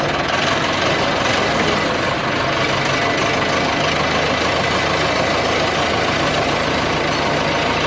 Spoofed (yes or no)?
no